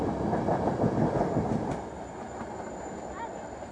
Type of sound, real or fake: real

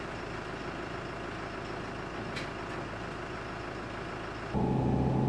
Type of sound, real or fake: real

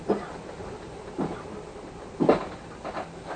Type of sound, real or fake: real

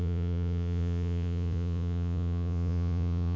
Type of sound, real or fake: fake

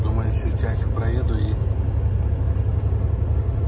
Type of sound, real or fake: real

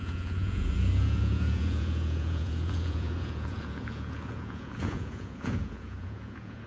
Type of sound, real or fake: fake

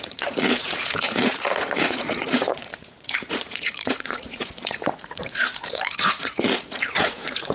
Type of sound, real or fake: fake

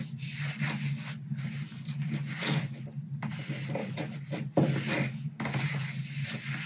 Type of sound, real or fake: real